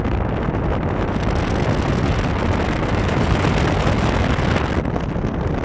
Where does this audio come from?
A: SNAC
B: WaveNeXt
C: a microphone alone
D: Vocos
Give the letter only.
C